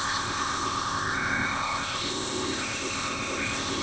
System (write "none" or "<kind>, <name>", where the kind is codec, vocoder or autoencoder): codec, ZipCodec